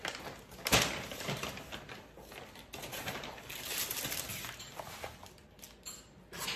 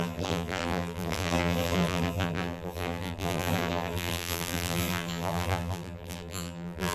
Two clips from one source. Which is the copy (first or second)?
second